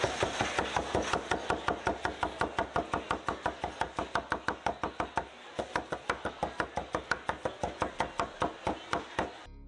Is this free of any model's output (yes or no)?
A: yes